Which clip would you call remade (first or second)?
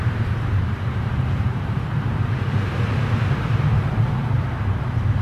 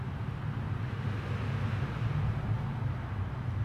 first